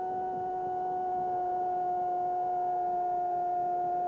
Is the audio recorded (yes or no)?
yes